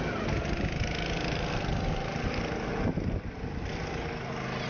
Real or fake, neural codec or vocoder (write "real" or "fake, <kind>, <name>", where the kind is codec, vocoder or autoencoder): real